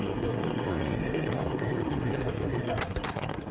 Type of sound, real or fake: fake